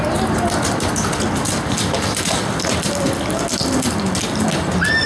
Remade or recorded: recorded